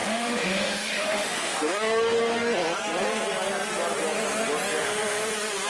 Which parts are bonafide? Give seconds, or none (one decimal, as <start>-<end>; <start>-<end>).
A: 1.7-4.8; 5.3-5.7

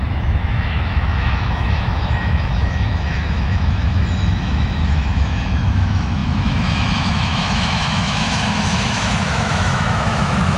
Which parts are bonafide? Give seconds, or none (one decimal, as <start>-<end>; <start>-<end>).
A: none

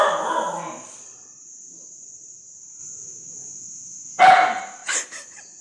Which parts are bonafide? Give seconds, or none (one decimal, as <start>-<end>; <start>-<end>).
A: 0.0-2.8; 4.2-5.6

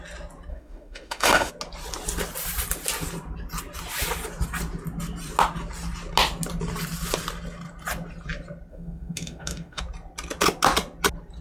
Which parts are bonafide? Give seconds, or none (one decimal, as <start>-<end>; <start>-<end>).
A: 0.0-0.5; 1.5-8.7; 9.8-11.4

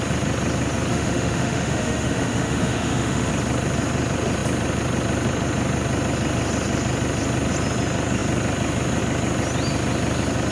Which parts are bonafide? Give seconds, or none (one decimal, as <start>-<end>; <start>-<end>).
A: 0.0-0.9; 3.3-10.5

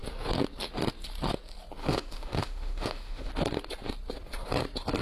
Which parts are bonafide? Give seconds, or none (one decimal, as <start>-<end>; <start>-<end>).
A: 0.0-1.8; 3.3-5.0

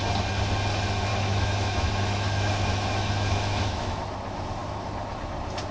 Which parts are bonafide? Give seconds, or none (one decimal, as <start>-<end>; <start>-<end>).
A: 0.0-1.1; 4.0-5.7